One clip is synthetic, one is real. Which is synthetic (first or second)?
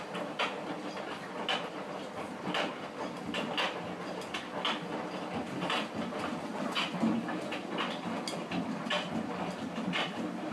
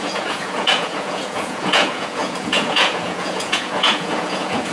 second